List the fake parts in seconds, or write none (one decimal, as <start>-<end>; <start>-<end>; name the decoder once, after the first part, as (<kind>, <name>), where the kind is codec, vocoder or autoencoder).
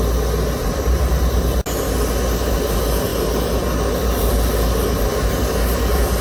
0.6-1.4 (vocoder, BigVGAN v2)